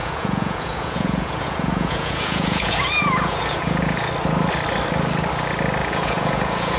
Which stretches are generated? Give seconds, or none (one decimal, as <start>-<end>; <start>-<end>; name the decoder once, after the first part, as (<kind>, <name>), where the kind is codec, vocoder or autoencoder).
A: 0.0-4.1 (vocoder, Vocos); 5.8-6.8